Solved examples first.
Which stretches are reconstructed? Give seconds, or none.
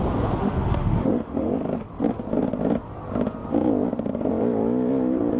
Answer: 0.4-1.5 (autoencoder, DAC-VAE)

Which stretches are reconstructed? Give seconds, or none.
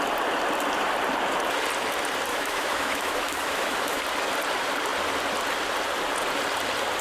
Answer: 2.3-4.0 (autoencoder, DAC-VAE)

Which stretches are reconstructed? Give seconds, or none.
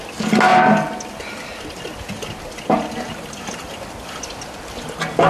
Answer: none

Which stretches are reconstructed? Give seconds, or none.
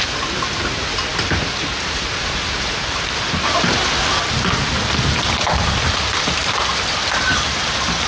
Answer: 0.0-3.8 (vocoder, BigVGAN v2); 5.3-8.1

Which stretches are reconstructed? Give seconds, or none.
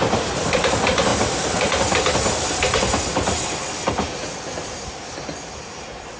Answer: none